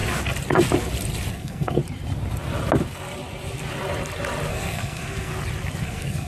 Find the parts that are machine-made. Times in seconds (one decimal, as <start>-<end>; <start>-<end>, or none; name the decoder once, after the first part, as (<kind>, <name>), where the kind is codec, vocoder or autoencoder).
1.3-1.8 (codec, SNAC); 4.5-5.3; 5.8-6.3